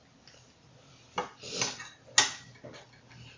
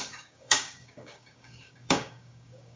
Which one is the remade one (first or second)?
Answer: second